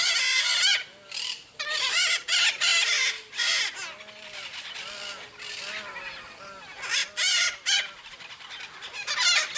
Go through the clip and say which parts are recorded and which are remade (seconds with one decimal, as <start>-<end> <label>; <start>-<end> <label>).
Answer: 0.0-9.6 recorded